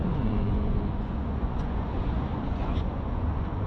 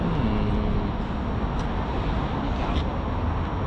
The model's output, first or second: first